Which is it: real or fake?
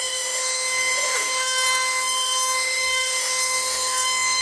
fake